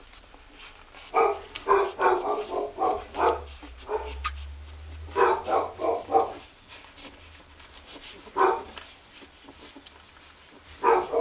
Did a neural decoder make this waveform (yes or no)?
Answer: no